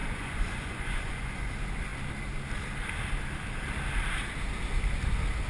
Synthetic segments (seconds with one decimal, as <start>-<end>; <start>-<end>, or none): 0.0-1.5